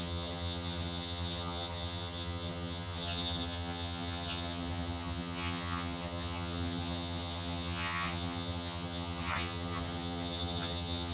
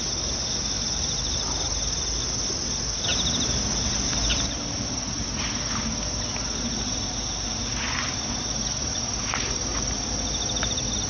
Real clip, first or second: second